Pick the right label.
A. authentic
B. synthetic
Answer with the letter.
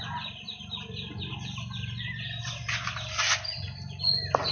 A